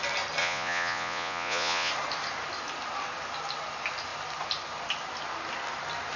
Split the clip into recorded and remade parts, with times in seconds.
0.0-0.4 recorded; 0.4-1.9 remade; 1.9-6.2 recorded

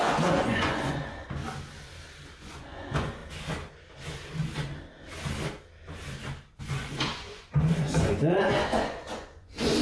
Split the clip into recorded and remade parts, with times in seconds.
0.0-1.4 remade; 1.4-2.4 recorded; 2.4-3.2 remade; 3.2-6.6 recorded; 6.6-9.8 remade

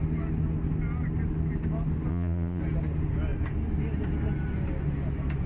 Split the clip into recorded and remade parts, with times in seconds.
0.0-2.1 recorded; 2.1-2.6 remade; 2.6-5.5 recorded

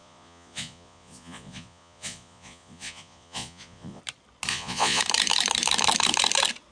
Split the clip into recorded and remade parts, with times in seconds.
0.0-4.0 remade; 4.0-4.5 recorded; 4.5-5.0 remade; 5.0-6.7 recorded